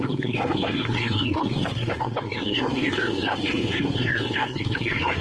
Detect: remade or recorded remade